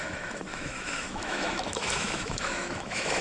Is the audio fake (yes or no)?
yes